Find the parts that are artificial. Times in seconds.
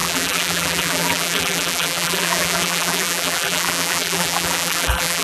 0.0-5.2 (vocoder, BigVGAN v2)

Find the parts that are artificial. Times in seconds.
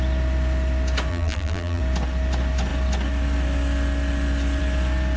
1.1-1.8 (vocoder, BigVGAN v2)